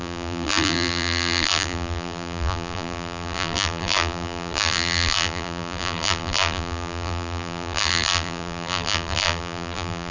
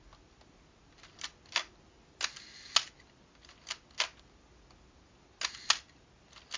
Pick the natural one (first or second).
second